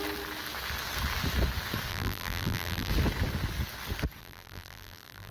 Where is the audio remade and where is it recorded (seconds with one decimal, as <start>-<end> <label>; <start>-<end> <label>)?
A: 0.0-1.9 recorded; 1.9-2.9 remade; 2.9-4.2 recorded; 4.2-5.3 remade